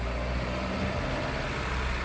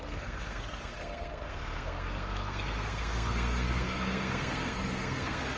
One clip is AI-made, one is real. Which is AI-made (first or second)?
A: second